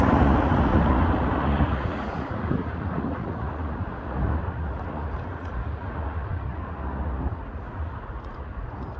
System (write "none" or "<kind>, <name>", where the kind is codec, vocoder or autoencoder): vocoder, Vocos